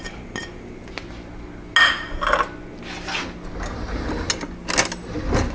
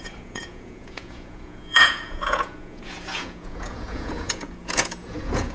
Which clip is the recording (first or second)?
first